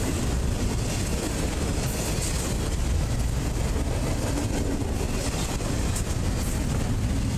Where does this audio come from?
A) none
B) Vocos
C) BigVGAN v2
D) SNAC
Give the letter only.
A